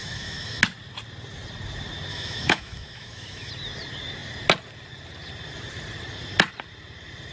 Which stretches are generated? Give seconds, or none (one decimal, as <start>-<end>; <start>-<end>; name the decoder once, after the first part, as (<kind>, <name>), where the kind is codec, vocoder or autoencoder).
0.0-0.6 (autoencoder, DAC-VAE); 2.1-3.5